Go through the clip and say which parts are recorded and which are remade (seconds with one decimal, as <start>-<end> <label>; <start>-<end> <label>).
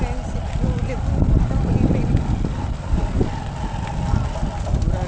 0.0-5.1 recorded